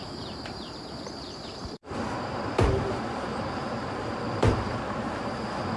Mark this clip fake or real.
fake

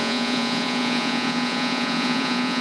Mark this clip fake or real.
fake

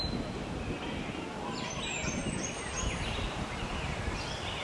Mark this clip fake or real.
real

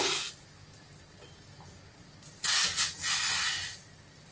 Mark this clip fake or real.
real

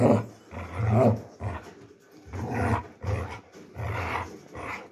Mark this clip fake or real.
real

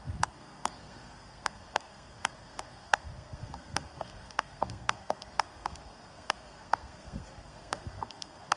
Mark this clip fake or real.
fake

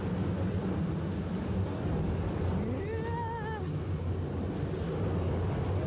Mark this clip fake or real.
real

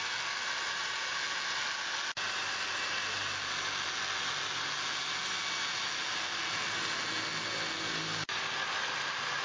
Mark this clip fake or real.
real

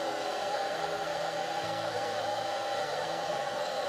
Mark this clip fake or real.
fake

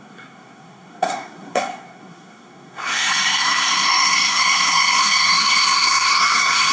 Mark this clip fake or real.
fake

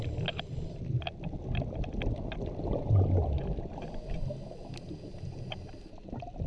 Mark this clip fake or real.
real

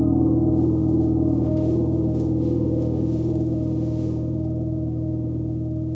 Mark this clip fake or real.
fake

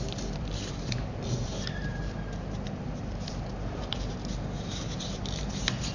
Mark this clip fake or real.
fake